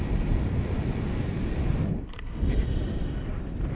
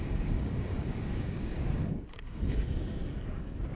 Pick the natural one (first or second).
first